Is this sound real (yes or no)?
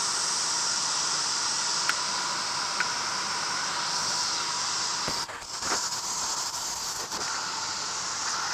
yes